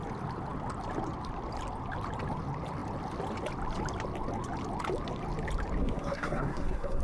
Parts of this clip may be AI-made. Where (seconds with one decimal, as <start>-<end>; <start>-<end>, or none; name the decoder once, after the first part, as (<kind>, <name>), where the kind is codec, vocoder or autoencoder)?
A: 5.8-7.0 (codec, SNAC)